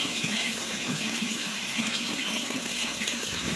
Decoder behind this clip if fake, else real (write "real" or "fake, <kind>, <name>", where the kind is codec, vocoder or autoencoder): fake, codec, SNAC